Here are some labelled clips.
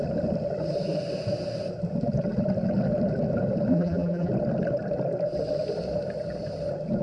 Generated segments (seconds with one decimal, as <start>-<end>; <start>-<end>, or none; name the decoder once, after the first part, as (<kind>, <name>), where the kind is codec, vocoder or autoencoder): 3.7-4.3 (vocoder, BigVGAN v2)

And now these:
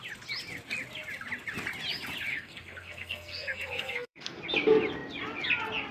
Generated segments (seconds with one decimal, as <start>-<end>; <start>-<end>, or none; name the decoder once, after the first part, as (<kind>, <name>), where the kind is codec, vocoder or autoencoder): 2.3-4.4 (codec, SNAC)

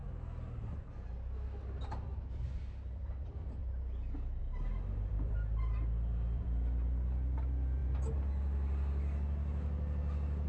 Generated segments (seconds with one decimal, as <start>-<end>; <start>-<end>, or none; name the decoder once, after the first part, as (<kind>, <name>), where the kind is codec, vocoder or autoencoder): 2.9-3.6 (vocoder, BigVGAN v2); 4.4-7.8

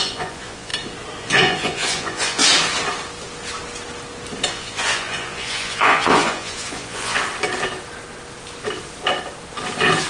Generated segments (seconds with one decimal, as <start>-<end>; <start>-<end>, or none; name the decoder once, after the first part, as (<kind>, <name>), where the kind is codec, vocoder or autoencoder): 0.0-0.7 (vocoder, Vocos); 1.2-2.4; 4.5-7.2

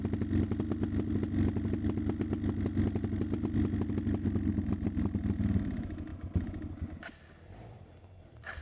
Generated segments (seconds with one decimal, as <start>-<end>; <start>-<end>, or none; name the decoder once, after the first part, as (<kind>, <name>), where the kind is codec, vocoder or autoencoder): none